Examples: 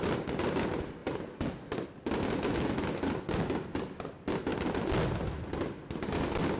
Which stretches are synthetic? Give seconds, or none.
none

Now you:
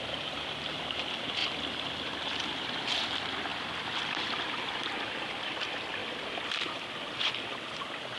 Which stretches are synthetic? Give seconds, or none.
0.0-1.4 (vocoder, BigVGAN v2); 2.9-8.2

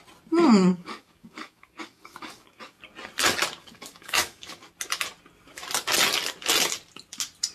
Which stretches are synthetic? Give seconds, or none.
0.7-2.8 (codec, DAC); 3.6-4.7